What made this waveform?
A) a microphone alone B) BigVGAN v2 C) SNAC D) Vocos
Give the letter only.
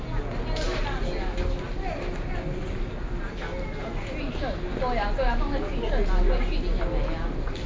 A